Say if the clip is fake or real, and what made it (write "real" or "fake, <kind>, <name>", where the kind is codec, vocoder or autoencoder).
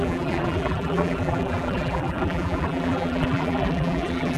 fake, vocoder, BigVGAN v2